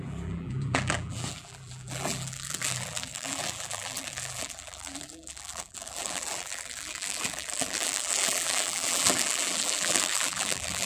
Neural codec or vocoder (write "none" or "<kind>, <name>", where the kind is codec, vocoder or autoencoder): vocoder, BigVGAN v2